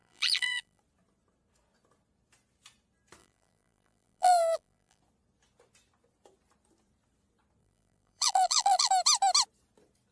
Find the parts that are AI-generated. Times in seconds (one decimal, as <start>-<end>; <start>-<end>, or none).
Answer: 0.0-0.8; 3.2-5.0; 7.6-8.9